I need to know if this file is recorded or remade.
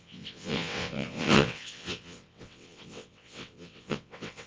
remade